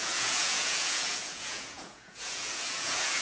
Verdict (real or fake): fake